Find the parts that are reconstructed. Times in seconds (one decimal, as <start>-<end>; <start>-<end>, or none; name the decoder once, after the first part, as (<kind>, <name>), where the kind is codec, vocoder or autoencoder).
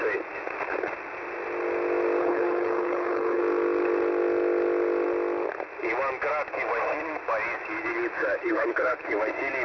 2.2-3.4 (codec, HILCodec); 8.4-9.1